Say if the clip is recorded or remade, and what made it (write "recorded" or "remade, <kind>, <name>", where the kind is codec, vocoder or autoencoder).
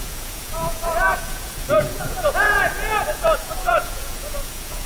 remade, vocoder, Vocos